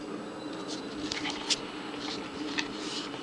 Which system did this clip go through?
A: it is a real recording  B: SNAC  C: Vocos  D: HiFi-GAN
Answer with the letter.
A